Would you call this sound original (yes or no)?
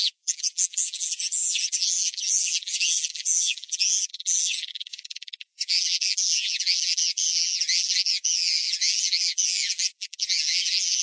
no